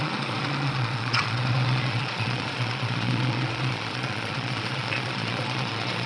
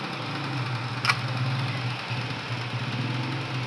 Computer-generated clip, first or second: first